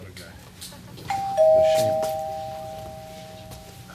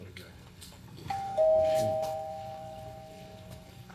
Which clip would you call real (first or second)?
first